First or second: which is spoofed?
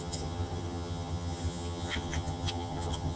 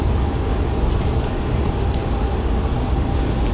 first